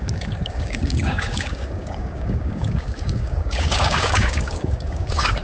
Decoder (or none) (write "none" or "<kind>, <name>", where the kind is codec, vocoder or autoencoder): codec, DAC